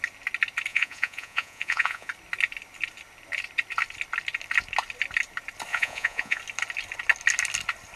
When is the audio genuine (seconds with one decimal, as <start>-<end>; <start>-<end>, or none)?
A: 0.0-0.7; 2.1-5.7; 6.4-8.0